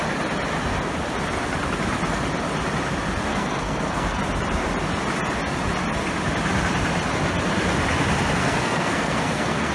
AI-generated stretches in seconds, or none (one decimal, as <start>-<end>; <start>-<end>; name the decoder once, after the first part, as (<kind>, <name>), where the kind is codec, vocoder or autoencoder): 3.3-4.2 (codec, SNAC); 8.4-9.7